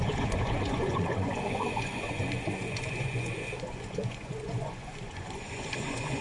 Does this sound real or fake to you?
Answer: fake